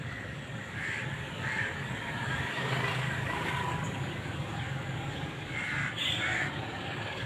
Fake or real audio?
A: fake